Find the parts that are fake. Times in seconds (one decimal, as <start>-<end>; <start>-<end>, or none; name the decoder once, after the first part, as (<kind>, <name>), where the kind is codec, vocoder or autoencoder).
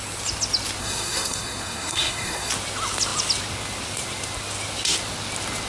0.8-2.5 (codec, SNAC)